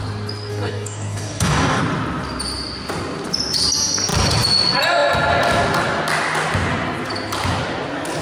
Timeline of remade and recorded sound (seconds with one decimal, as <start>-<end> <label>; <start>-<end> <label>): 0.0-0.5 recorded; 0.5-1.8 remade; 1.8-8.2 recorded